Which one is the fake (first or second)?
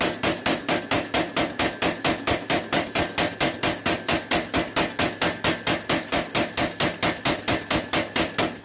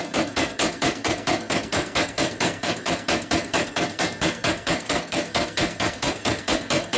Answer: second